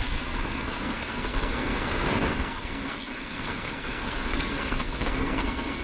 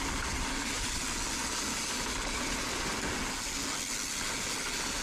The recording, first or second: second